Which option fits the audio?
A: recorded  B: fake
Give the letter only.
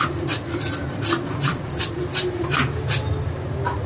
A